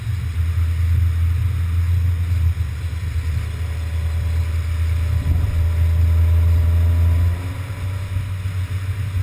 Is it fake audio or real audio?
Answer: real